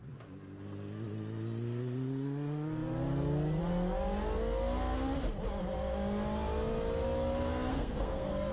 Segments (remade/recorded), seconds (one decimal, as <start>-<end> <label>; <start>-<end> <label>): 0.0-7.7 recorded; 7.7-8.5 remade